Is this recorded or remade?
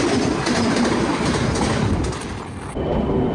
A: recorded